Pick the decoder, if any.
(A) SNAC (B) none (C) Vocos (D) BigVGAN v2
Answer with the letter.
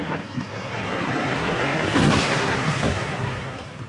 A